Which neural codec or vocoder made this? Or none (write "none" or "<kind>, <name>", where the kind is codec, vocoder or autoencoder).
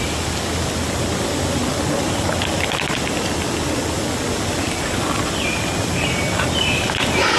none